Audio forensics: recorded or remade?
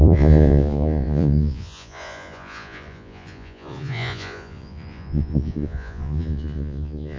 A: remade